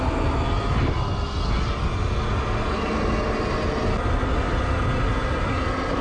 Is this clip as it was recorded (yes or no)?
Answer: yes